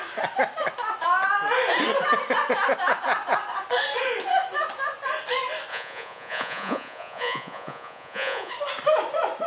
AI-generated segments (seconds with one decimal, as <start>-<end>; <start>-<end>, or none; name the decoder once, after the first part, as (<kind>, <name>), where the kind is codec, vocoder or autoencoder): 5.7-8.5 (vocoder, Vocos)